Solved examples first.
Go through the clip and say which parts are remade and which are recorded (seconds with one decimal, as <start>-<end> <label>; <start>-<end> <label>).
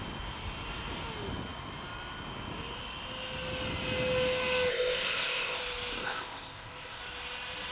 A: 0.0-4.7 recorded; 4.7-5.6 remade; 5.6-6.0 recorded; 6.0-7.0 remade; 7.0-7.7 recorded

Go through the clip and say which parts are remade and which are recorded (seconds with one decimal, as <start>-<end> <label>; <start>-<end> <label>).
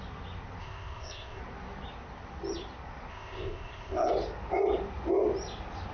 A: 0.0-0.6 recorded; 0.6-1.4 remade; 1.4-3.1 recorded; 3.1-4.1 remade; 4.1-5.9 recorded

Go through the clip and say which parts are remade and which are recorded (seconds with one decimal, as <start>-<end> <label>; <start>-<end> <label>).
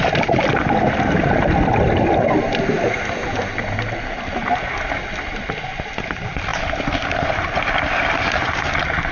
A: 0.0-9.1 recorded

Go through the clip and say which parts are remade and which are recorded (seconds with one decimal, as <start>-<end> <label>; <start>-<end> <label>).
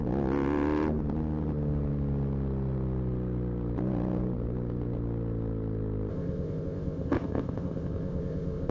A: 0.0-6.1 recorded; 6.1-8.7 remade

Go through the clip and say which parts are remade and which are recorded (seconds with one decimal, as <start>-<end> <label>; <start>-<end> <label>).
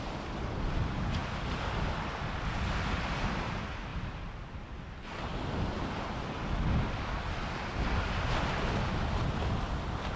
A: 0.0-10.2 recorded